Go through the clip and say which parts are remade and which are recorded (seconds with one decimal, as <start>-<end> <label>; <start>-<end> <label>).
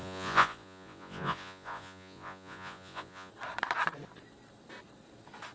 0.0-3.3 remade; 3.3-5.5 recorded